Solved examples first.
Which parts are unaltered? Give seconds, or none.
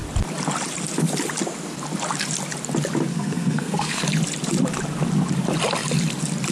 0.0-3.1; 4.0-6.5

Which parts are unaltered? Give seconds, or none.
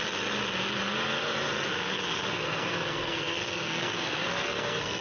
0.0-1.7